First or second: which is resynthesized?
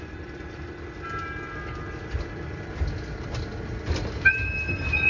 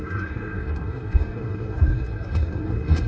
second